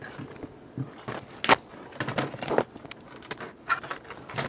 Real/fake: real